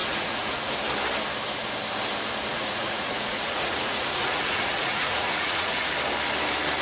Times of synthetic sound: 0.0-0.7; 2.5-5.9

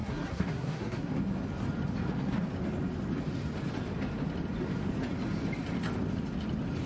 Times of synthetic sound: 0.0-1.1

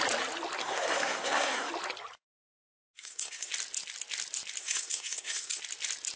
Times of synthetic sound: 0.6-1.7; 2.7-3.5; 4.6-5.6

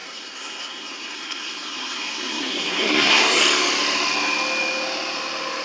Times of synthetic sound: 0.0-3.4

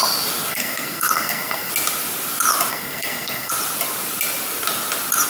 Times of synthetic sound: 0.5-1.7; 2.7-3.5

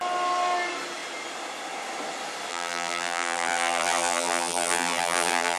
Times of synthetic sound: 2.5-5.6

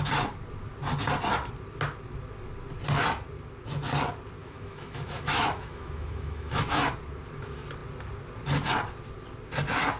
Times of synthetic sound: 4.4-6.9

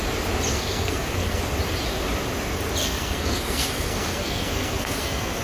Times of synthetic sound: 0.5-1.4; 2.8-5.4